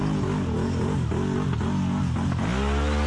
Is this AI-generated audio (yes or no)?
no